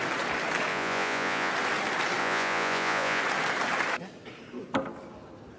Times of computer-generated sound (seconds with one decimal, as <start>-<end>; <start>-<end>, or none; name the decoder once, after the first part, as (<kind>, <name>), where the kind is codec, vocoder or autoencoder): 0.7-1.5 (vocoder, Vocos); 2.2-3.2